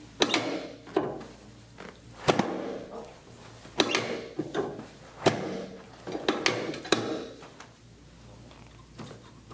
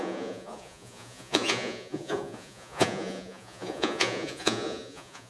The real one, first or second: first